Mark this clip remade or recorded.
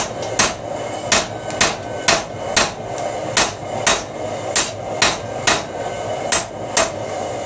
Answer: recorded